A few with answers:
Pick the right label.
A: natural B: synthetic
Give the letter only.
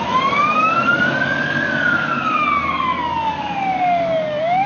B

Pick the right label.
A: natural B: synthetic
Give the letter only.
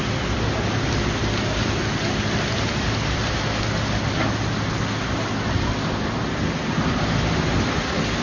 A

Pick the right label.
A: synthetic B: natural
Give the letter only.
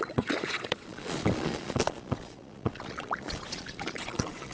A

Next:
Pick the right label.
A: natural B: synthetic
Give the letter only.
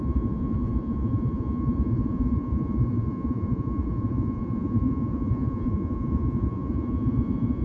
B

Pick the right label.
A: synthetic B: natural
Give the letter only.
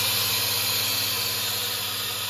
B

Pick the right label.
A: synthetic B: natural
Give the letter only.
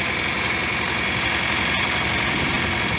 B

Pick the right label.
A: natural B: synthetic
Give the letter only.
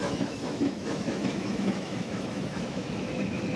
B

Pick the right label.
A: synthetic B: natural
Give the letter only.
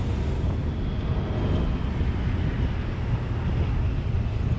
B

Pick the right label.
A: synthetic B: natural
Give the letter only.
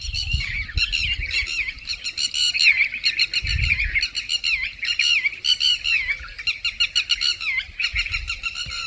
B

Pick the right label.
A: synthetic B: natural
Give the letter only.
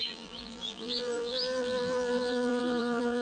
A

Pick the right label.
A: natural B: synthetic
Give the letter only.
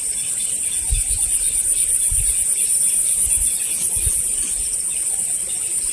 B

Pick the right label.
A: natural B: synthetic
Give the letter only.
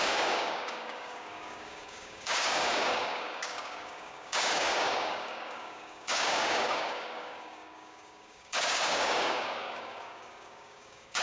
B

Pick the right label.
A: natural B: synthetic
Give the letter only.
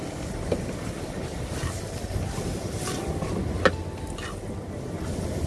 A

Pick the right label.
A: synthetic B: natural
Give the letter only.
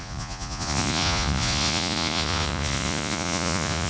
A